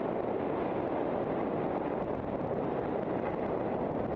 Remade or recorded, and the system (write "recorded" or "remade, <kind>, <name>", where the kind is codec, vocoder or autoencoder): recorded